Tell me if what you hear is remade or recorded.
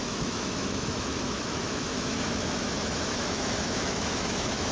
remade